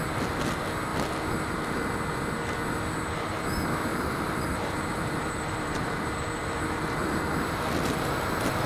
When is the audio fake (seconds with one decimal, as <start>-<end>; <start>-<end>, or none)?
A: 3.9-6.5

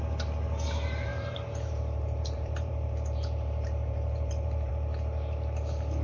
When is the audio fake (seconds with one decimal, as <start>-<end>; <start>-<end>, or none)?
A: 1.1-4.7

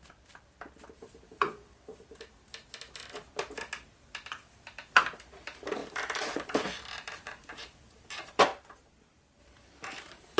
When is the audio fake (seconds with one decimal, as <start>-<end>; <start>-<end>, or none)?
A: 0.0-1.9; 5.0-10.4

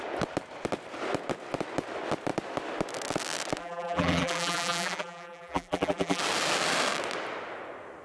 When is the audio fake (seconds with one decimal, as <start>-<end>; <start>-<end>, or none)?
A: 3.6-6.2

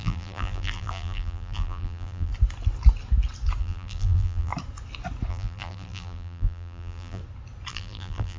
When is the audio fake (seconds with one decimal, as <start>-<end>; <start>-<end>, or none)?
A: 0.0-2.3; 3.6-4.5; 5.3-7.2; 7.7-8.4

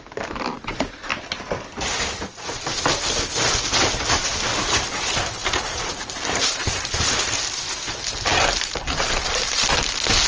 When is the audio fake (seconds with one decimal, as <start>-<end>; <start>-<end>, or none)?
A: 5.4-6.8; 8.3-9.6

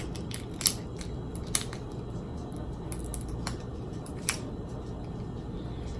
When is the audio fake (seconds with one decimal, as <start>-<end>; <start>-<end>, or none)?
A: 3.7-4.9

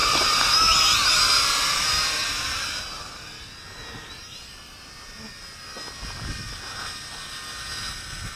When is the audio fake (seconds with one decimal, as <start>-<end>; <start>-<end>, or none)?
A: 0.0-2.2